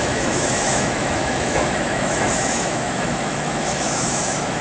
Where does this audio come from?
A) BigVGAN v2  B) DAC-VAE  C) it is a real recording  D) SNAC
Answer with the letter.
B